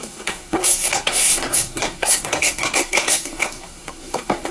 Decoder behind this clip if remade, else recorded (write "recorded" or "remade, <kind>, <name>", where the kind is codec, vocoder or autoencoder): remade, codec, SNAC